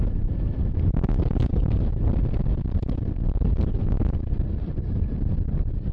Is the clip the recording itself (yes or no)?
yes